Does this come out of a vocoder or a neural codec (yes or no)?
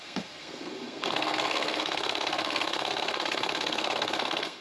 yes